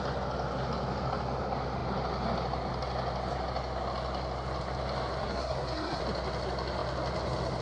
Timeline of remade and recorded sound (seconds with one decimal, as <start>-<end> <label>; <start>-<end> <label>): 0.0-5.2 recorded; 5.2-6.0 remade; 6.0-7.6 recorded

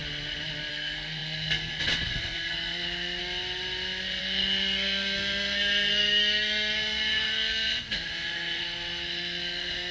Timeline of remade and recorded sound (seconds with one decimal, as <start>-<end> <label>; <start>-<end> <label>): 0.0-0.7 recorded; 0.7-3.2 remade; 3.2-4.2 recorded; 4.2-9.9 remade

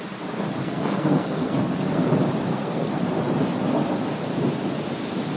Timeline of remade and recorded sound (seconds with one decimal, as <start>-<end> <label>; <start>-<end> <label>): 0.0-0.6 recorded; 0.6-2.1 remade; 2.1-2.5 recorded; 2.5-3.0 remade; 3.0-5.4 recorded

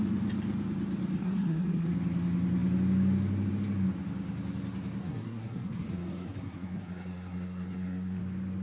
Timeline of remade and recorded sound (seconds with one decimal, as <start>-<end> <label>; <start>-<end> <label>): 0.0-1.2 recorded; 1.2-1.9 remade; 1.9-5.0 recorded; 5.0-8.2 remade; 8.2-8.6 recorded

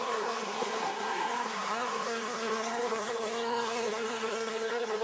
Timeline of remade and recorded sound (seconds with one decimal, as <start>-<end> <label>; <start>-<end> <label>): 0.0-5.0 remade

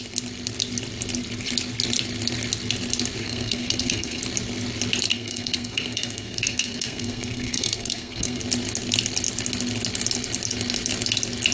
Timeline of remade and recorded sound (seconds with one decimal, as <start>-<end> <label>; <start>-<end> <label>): 0.0-3.2 recorded; 3.2-4.2 remade; 4.2-5.1 recorded; 5.1-8.4 remade; 8.4-11.5 recorded

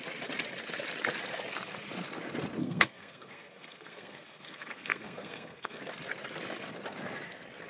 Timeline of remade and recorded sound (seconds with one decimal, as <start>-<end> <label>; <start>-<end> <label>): 0.0-2.6 recorded; 2.6-5.8 remade; 5.8-7.7 recorded

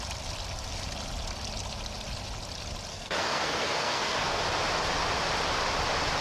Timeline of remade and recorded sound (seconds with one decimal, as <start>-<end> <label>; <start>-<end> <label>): 0.0-2.9 recorded; 2.9-4.4 remade; 4.4-6.2 recorded